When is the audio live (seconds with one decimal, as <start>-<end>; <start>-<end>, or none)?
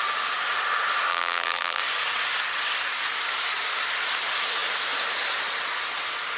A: 0.0-1.1; 1.8-6.4